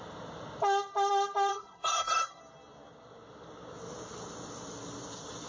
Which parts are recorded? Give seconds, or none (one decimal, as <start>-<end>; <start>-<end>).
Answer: 0.0-1.5; 2.4-5.5